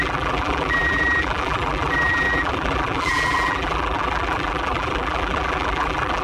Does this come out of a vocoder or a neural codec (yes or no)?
yes